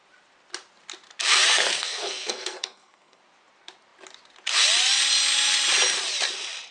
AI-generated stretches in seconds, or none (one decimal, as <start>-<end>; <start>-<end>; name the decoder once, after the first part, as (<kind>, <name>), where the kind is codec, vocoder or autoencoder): 1.6-3.2 (codec, SNAC)